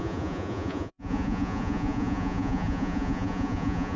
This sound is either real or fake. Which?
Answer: fake